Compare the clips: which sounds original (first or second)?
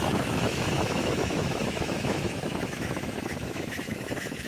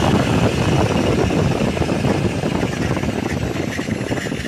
second